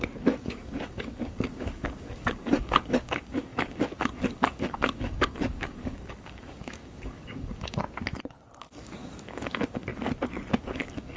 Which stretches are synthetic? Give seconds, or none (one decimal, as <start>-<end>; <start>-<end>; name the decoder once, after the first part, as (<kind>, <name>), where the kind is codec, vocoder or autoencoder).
0.0-7.8 (codec, DAC); 8.7-9.9; 10.6-11.2